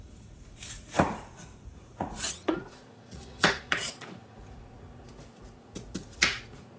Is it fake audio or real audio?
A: fake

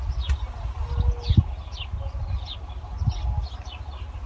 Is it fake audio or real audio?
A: real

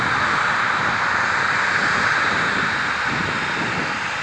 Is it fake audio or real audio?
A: fake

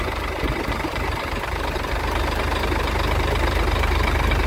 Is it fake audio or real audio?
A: fake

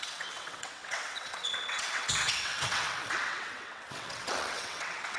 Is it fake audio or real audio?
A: fake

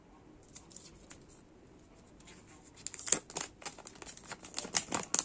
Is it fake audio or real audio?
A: real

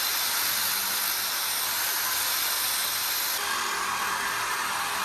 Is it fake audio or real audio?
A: real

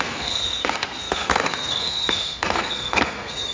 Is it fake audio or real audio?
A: fake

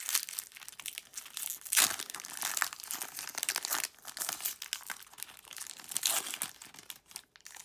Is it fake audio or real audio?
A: real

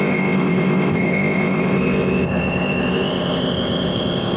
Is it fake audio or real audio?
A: fake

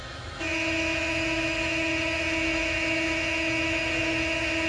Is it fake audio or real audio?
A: fake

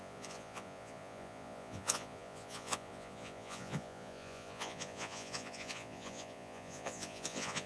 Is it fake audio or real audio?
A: fake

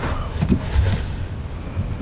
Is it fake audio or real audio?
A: real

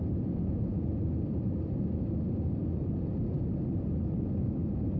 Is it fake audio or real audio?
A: real